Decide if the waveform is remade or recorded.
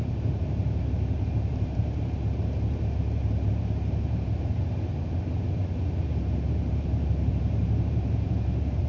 remade